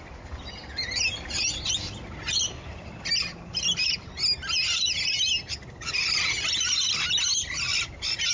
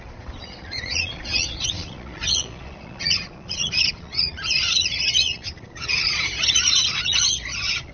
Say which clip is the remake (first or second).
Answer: second